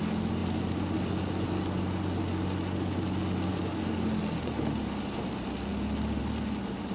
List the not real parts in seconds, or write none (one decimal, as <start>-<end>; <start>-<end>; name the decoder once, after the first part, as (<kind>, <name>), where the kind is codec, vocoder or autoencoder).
none